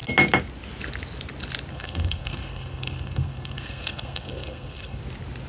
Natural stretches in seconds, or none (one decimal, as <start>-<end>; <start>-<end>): 0.0-1.7; 5.0-5.5